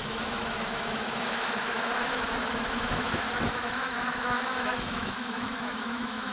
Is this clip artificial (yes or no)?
yes